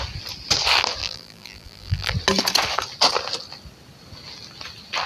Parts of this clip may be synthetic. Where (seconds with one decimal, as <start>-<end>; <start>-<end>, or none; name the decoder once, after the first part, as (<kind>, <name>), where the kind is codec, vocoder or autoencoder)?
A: 1.0-2.1 (vocoder, BigVGAN v2)